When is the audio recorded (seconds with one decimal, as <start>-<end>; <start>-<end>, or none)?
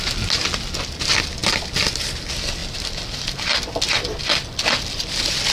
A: 0.0-5.5